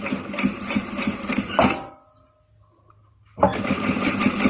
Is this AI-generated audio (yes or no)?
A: no